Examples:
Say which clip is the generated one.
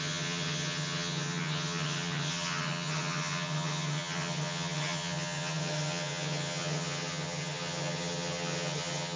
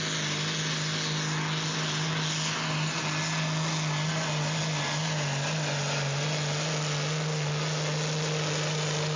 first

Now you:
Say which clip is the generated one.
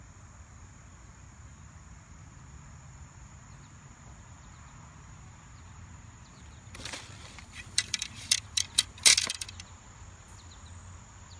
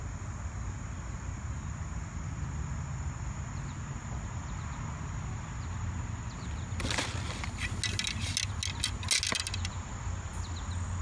first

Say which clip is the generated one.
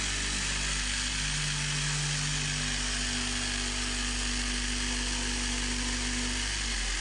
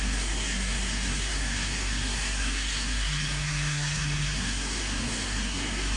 second